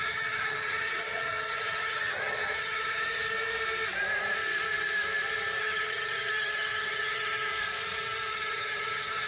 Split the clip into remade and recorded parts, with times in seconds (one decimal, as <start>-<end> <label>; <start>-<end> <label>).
0.0-3.2 remade; 3.2-5.6 recorded; 5.6-7.5 remade; 7.5-8.3 recorded; 8.3-9.3 remade

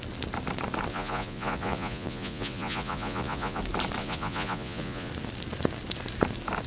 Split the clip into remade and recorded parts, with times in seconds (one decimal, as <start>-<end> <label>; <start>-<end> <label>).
0.0-0.9 recorded; 0.9-3.6 remade; 3.6-4.0 recorded; 4.0-5.1 remade; 5.1-6.7 recorded